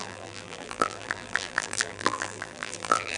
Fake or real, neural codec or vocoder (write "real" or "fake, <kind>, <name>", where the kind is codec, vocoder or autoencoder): fake, vocoder, BigVGAN v2